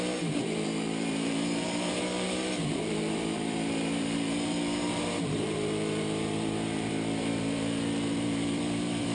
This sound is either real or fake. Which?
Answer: fake